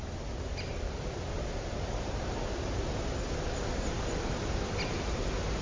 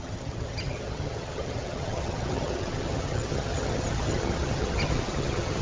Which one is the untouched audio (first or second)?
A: first